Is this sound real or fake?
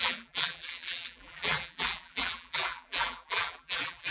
fake